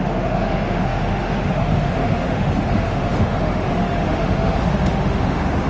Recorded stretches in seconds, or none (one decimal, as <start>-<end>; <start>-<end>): none